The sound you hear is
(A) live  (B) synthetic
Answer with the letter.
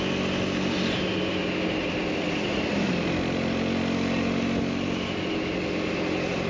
A